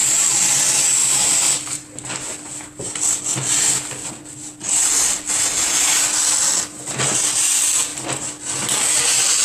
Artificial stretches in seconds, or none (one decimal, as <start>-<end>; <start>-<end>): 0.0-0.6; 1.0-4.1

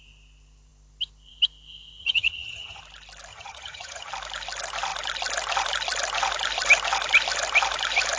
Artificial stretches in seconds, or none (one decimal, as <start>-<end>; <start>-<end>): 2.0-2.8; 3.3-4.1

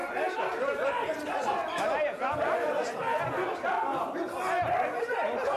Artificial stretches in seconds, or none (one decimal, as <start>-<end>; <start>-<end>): none

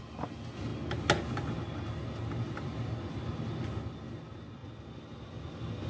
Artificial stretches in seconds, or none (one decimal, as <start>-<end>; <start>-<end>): none

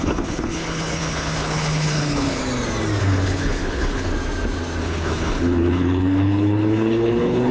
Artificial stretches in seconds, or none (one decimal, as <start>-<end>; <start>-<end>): 0.0-2.4; 3.0-4.1; 4.8-7.5